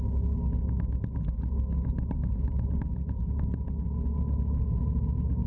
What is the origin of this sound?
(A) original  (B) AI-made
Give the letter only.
A